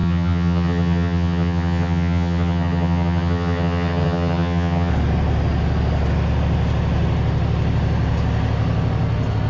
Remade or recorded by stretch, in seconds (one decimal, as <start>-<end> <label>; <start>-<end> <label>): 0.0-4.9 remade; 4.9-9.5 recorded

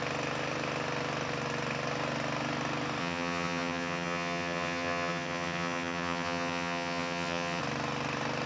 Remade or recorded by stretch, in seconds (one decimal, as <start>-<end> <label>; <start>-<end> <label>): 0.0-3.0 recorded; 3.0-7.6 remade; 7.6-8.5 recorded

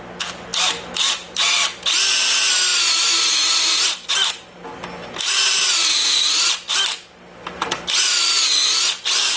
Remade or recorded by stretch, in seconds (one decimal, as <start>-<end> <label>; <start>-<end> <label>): 0.0-9.4 recorded

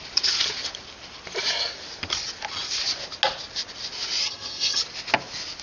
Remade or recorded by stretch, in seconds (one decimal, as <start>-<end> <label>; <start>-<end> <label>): 0.0-4.2 recorded; 4.2-4.8 remade; 4.8-5.6 recorded

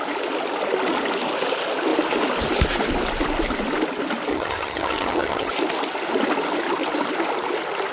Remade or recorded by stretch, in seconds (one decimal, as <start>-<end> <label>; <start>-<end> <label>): 0.0-4.3 recorded; 4.3-5.5 remade; 5.5-7.9 recorded

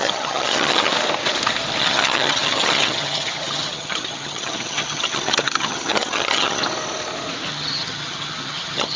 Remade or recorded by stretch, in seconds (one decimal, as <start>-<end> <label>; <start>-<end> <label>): 0.0-0.9 remade; 0.9-1.8 recorded; 1.8-6.6 remade; 6.6-7.5 recorded; 7.5-9.0 remade